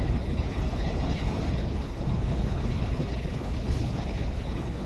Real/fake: fake